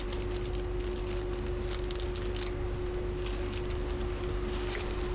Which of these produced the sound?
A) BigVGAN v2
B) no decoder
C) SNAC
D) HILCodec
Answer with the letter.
B